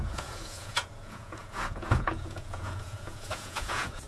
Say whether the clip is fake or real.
fake